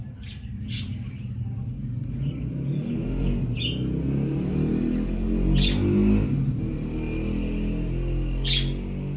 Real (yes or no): yes